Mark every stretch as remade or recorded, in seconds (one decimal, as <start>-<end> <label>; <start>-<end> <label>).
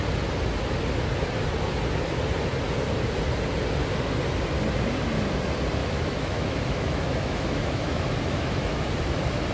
0.0-5.8 recorded; 5.8-8.9 remade; 8.9-9.5 recorded